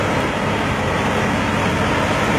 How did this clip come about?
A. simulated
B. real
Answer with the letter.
B